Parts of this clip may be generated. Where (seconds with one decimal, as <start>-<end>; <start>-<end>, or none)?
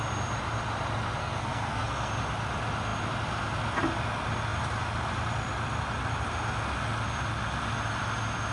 1.2-2.1